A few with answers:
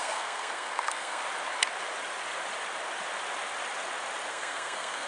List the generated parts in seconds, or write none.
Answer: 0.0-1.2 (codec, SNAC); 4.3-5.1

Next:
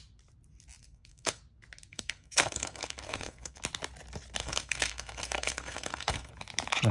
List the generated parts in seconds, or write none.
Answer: 0.8-1.4 (codec, SNAC); 1.9-3.6; 4.4-6.3

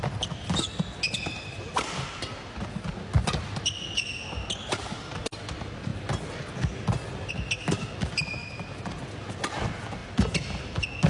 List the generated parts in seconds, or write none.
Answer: none

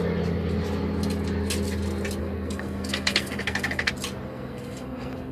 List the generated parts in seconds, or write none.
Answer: 2.2-3.9 (codec, SNAC); 4.3-5.3

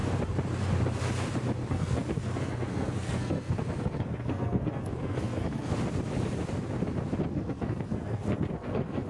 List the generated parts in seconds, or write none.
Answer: 1.7-5.7 (codec, SNAC); 7.3-9.1

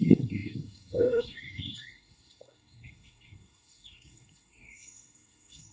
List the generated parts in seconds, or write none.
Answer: 0.0-5.7 (codec, SNAC)

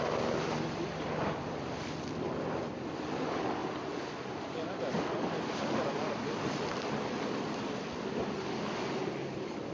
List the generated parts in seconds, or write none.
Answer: none